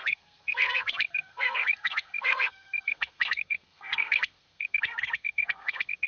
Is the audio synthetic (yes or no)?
yes